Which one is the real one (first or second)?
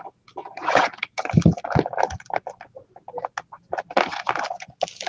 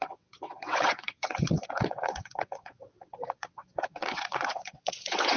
first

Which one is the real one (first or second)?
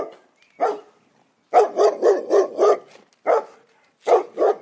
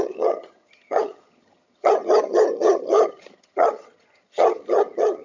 first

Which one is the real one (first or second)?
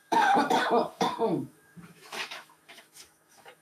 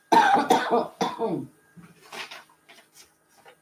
second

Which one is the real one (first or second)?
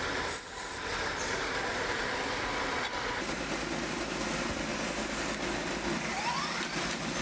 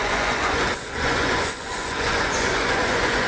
first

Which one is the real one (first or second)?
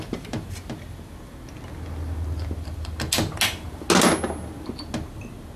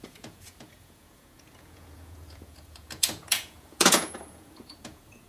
first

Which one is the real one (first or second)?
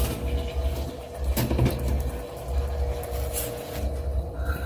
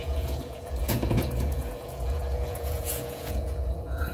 first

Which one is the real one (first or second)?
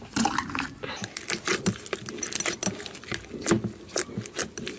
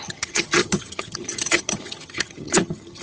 first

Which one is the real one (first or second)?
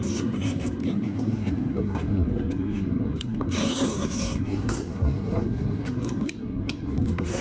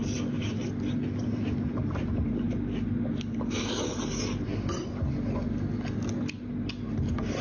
second